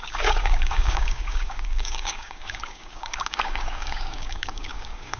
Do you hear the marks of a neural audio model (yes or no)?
yes